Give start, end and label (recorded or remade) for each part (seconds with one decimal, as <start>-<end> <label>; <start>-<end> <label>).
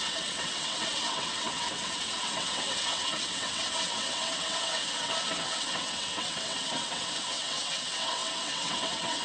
0.0-9.2 remade